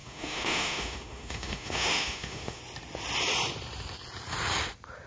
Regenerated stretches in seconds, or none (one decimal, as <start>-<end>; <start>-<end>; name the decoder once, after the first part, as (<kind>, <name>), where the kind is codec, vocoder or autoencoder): 0.0-2.6 (autoencoder, DAC-VAE)